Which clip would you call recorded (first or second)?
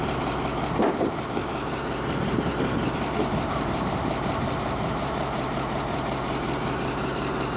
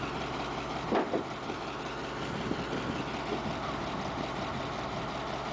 second